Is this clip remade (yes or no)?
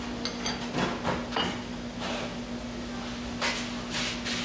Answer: no